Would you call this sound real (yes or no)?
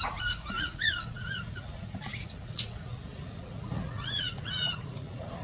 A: no